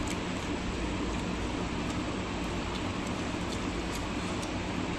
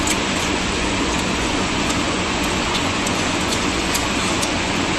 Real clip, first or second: first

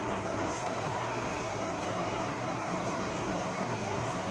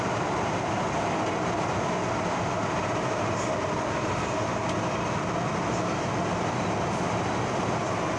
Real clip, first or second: second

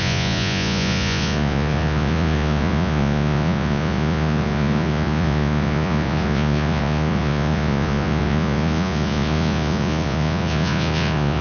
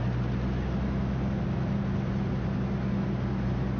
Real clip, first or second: second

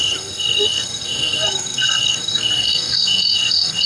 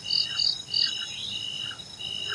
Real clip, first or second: second